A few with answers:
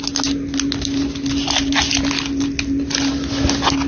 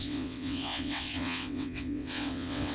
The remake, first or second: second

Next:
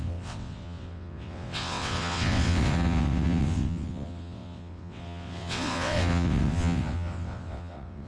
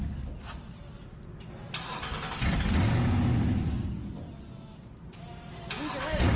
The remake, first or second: first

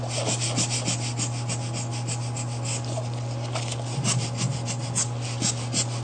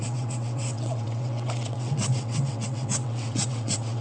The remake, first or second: second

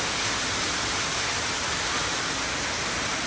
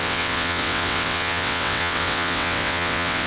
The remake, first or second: second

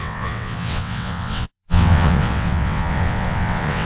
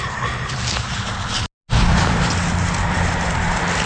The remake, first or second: first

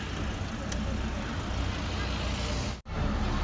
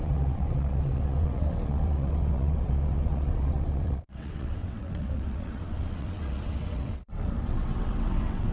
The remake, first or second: second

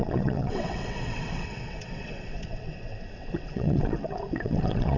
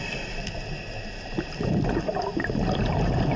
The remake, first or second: first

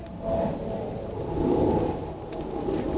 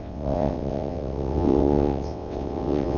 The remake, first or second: second